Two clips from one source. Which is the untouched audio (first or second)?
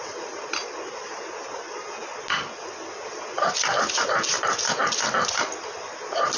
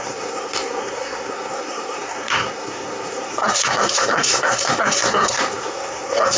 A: first